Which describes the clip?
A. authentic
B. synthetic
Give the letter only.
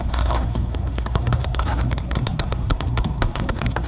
B